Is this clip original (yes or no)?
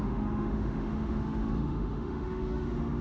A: no